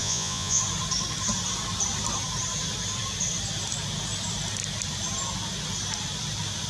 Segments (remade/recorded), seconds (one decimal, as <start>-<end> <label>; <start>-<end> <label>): 0.0-0.6 remade; 0.6-6.7 recorded